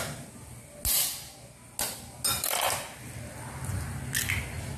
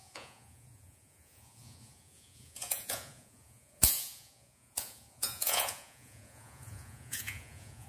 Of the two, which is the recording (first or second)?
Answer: first